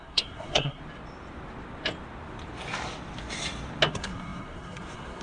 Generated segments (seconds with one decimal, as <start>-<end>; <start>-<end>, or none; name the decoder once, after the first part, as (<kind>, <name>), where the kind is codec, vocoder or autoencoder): 0.0-0.8 (codec, SNAC); 3.9-5.2